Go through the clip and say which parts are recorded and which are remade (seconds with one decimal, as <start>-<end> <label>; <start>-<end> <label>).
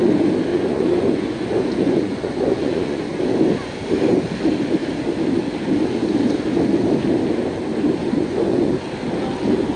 0.0-0.5 recorded; 0.5-3.2 remade; 3.2-8.0 recorded; 8.0-8.7 remade; 8.7-9.8 recorded